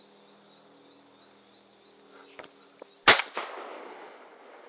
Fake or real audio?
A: real